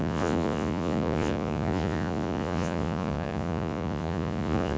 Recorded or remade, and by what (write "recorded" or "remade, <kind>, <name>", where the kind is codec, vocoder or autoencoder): remade, vocoder, Vocos